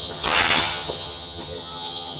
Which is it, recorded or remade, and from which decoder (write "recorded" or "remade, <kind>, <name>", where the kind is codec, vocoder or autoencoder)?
remade, vocoder, HiFi-GAN